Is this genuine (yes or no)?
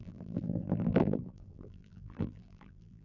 no